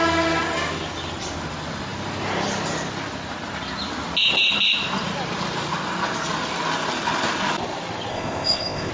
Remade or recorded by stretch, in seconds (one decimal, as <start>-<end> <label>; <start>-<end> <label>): 0.0-8.1 recorded; 8.1-8.9 remade